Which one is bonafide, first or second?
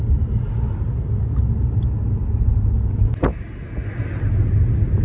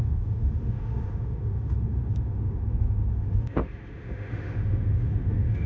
first